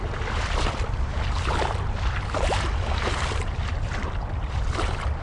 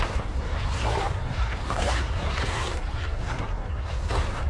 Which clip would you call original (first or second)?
first